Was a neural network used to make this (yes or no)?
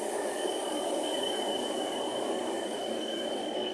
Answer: yes